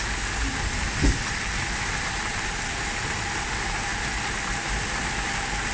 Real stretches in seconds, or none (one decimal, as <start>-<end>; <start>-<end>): 0.0-5.7